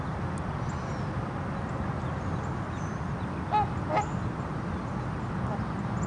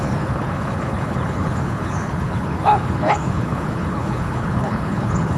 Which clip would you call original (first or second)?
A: first